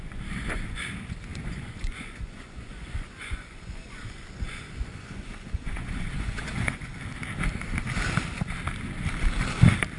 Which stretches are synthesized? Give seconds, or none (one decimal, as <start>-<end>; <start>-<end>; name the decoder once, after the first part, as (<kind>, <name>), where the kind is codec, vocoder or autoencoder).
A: 0.0-6.9 (vocoder, Vocos)